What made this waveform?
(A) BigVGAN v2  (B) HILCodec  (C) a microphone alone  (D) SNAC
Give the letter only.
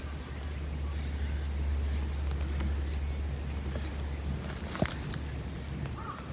C